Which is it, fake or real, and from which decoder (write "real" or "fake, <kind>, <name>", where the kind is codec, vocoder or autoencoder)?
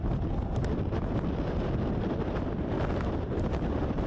real